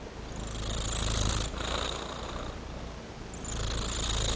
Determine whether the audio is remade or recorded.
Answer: recorded